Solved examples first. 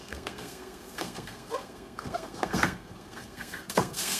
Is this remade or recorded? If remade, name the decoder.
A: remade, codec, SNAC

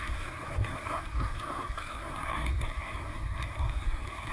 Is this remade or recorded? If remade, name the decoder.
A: remade, codec, SNAC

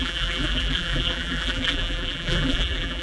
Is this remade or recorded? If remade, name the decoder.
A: remade, vocoder, BigVGAN v2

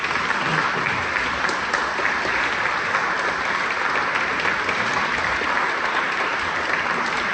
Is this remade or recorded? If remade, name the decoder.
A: recorded